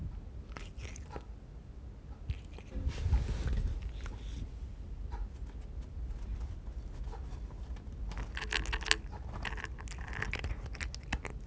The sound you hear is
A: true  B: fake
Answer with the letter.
A